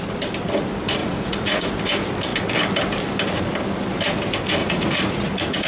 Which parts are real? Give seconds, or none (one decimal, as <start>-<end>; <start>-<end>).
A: 0.0-1.0; 1.7-4.6